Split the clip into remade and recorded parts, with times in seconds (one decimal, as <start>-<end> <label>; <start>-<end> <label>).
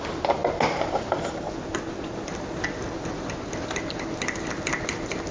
0.0-5.3 recorded